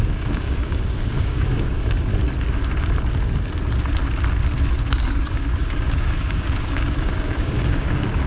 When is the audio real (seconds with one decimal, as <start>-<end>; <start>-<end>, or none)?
2.1-4.8